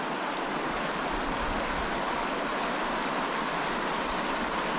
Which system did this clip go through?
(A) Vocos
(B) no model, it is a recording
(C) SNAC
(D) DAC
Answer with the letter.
B